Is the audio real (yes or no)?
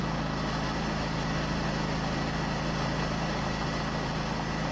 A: yes